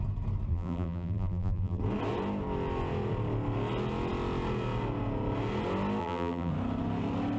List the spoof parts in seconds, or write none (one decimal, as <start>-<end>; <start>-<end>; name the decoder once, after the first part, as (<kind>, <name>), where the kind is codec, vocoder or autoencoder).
0.5-1.8 (vocoder, BigVGAN v2); 6.0-6.5